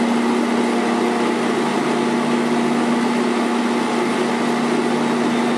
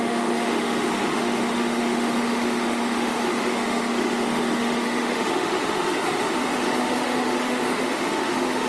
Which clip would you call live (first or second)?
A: first